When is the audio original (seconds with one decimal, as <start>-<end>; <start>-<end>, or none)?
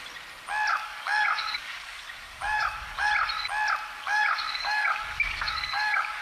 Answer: 0.0-0.7; 3.1-4.0